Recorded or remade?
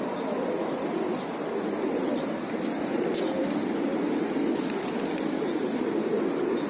recorded